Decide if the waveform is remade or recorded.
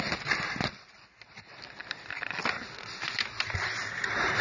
recorded